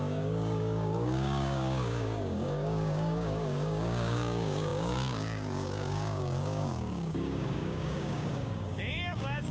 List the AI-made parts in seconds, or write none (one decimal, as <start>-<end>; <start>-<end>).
0.0-9.5

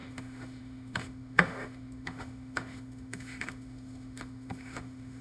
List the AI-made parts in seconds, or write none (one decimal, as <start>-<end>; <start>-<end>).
0.0-5.2

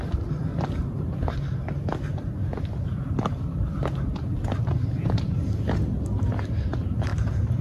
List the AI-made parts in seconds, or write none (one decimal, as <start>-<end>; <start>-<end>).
0.8-1.4; 7.1-7.6

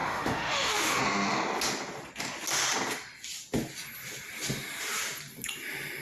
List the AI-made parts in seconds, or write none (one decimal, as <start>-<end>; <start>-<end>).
0.0-1.0

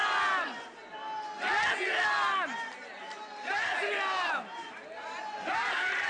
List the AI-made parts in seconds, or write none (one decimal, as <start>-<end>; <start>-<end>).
3.0-6.1